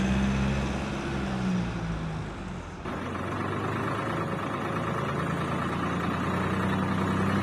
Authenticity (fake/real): real